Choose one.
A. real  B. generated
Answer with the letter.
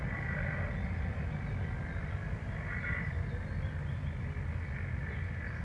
A